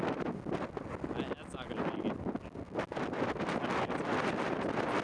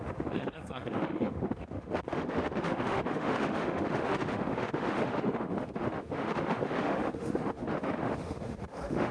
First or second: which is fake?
second